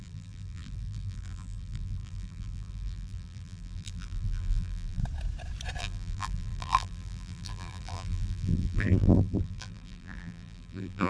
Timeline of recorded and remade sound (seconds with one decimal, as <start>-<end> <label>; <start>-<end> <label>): 0.0-5.0 remade; 5.0-5.8 recorded; 5.8-11.1 remade